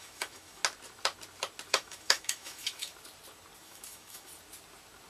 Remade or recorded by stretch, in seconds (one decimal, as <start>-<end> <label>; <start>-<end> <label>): 0.0-0.6 remade; 0.6-1.7 recorded; 1.7-2.9 remade; 2.9-3.6 recorded; 3.6-4.3 remade; 4.3-5.1 recorded